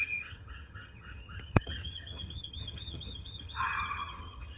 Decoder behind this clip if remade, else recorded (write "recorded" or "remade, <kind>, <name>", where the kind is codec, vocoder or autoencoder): remade, vocoder, HiFi-GAN